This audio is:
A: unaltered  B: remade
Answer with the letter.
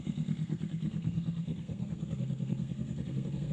B